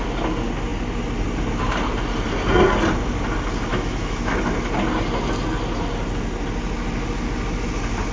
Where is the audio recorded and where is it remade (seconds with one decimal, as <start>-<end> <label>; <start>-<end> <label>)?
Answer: 0.0-3.7 recorded; 3.7-4.4 remade; 4.4-8.1 recorded